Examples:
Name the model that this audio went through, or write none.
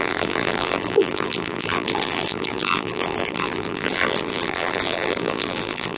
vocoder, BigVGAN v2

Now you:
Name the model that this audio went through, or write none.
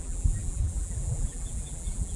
vocoder, BigVGAN v2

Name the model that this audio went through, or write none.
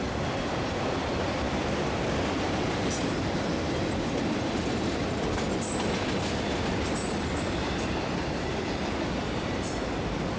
vocoder, BigVGAN v2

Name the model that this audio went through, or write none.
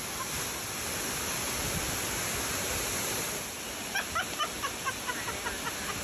none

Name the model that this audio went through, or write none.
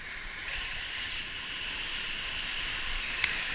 vocoder, BigVGAN v2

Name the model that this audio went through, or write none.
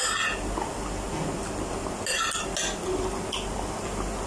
none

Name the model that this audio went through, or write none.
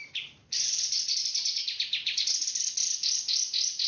none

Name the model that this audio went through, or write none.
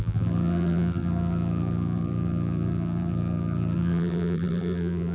vocoder, BigVGAN v2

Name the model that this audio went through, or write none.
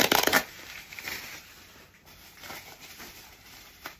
vocoder, BigVGAN v2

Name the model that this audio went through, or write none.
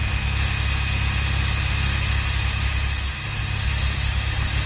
none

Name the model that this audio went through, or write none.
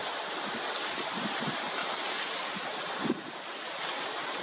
none